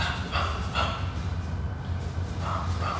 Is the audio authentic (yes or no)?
yes